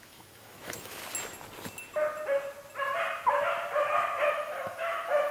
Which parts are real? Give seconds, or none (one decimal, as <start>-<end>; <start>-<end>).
1.0-4.2